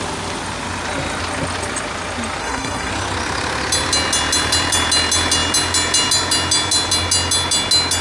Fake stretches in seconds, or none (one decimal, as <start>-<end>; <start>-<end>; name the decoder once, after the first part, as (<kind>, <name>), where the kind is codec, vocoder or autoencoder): 2.4-2.9 (codec, SNAC)